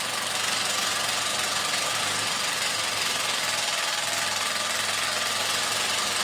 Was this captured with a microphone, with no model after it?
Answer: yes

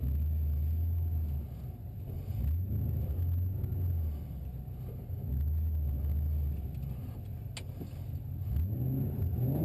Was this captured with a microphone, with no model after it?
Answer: yes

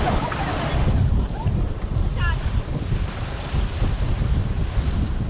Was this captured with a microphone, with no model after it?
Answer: yes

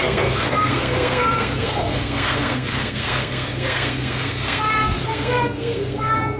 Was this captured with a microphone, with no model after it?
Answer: no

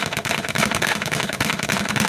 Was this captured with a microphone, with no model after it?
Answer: no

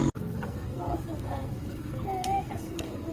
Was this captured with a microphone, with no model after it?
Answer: no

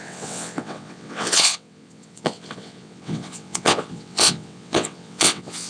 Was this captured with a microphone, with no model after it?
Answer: no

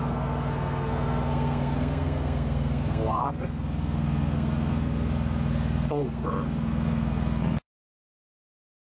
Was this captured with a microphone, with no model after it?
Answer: no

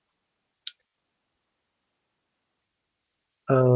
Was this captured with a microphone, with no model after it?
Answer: yes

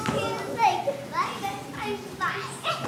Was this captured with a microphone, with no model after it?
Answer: yes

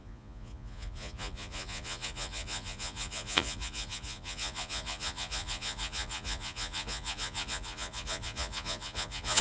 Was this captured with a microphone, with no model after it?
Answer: no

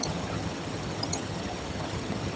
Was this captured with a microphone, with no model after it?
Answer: no